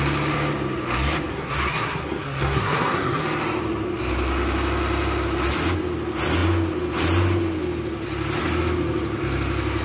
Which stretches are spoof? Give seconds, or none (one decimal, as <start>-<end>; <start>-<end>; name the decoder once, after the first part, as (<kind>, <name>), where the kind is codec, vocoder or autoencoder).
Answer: 1.3-3.2 (codec, SNAC)